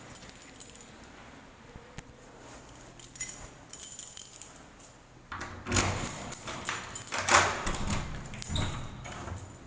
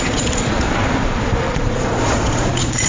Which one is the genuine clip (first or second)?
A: first